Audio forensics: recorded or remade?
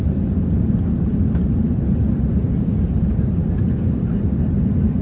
recorded